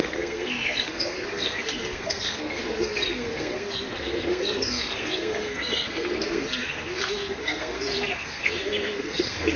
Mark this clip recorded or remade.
remade